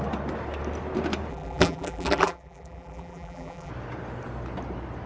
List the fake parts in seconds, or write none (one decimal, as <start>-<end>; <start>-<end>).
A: 1.3-3.7